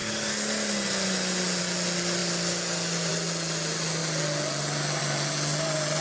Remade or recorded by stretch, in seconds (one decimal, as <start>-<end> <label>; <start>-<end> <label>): 0.0-6.0 recorded